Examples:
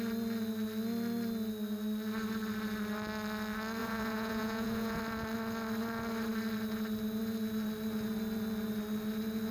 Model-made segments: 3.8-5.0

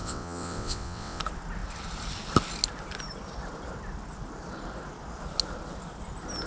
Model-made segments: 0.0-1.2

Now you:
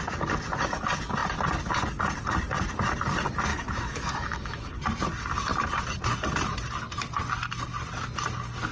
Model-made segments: 3.5-4.7

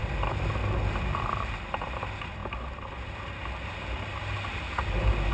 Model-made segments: 0.0-0.6; 1.1-2.4

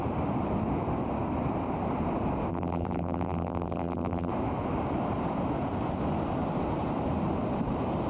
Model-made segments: 2.5-4.3